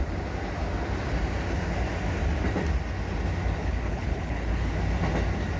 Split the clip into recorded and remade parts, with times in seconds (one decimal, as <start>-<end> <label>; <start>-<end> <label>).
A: 0.0-3.6 recorded; 3.6-4.7 remade; 4.7-5.6 recorded

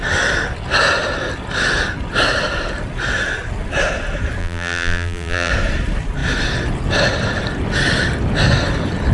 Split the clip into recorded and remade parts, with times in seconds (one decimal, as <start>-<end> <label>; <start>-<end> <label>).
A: 0.0-4.4 recorded; 4.4-5.5 remade; 5.5-9.1 recorded

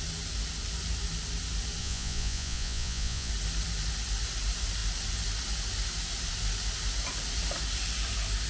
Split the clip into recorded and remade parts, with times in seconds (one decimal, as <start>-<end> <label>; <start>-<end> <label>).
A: 0.0-1.8 recorded; 1.8-3.3 remade; 3.3-8.5 recorded

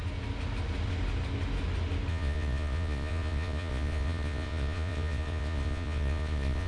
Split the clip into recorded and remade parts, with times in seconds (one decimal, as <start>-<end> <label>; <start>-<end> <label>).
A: 0.0-2.1 recorded; 2.1-6.7 remade

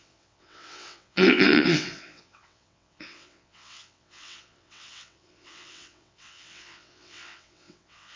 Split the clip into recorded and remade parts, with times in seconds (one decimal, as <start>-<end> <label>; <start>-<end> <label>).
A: 0.0-8.2 remade

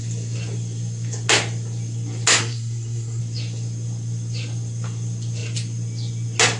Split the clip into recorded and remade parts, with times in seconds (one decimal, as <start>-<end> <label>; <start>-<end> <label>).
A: 0.0-2.4 recorded; 2.4-3.2 remade; 3.2-6.6 recorded

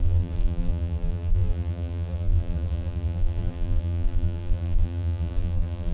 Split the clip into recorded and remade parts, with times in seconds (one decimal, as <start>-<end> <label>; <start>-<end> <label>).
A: 0.0-5.9 remade